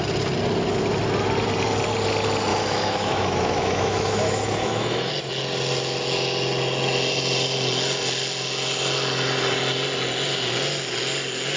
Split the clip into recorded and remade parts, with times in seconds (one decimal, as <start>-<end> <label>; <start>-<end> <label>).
0.0-2.5 recorded; 2.5-5.1 remade; 5.1-11.6 recorded